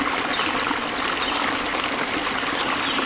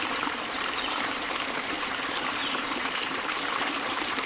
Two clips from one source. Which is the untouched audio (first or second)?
first